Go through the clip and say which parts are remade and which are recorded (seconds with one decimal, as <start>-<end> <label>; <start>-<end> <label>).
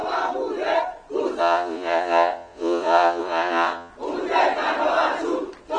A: 0.0-1.4 recorded; 1.4-3.9 remade; 3.9-5.8 recorded